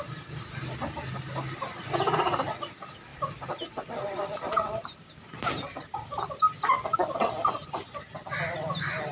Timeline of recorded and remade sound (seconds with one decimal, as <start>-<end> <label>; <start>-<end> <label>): 0.0-9.1 recorded